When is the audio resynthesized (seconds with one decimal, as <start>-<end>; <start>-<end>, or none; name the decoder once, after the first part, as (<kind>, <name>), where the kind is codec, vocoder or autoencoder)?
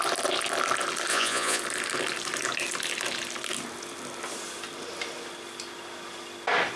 1.1-1.6 (vocoder, Vocos)